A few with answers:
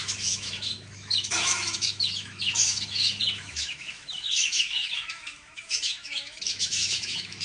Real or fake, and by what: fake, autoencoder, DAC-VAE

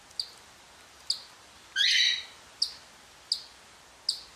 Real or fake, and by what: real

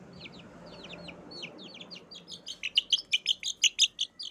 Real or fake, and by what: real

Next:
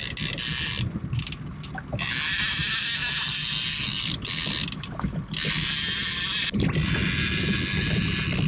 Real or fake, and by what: real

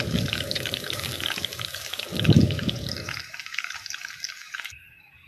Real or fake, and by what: fake, codec, DAC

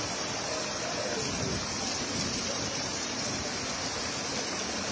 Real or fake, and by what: fake, vocoder, BigVGAN v2